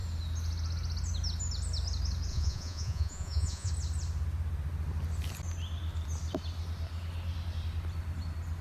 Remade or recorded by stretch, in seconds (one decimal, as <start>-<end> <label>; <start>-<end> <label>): 0.0-2.3 recorded; 2.3-3.7 remade; 3.7-8.6 recorded